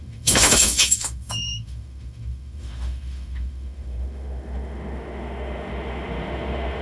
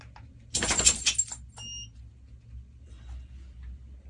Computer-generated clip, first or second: first